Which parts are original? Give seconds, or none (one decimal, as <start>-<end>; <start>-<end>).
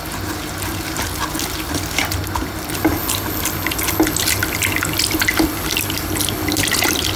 0.0-7.2